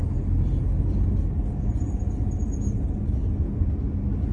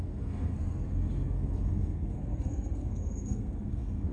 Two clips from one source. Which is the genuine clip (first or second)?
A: first